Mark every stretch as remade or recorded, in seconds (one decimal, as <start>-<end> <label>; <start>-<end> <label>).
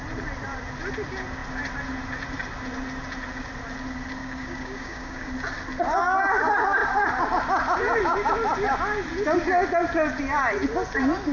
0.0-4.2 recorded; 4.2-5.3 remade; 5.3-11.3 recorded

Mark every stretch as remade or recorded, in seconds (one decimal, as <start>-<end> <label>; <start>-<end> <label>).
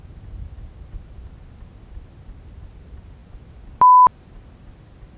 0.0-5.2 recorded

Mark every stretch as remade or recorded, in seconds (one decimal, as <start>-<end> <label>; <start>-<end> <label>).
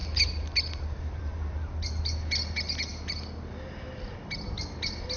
0.0-5.2 recorded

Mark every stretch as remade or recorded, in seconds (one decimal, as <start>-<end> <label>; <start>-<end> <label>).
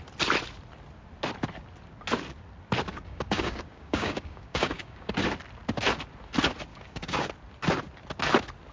0.0-2.9 recorded; 2.9-5.1 remade; 5.1-6.7 recorded; 6.7-7.3 remade; 7.3-8.7 recorded